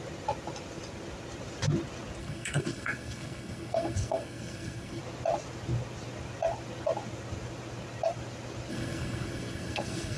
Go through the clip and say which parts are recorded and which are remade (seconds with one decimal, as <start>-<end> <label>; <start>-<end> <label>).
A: 0.0-2.2 recorded; 2.2-5.0 remade; 5.0-8.7 recorded; 8.7-10.2 remade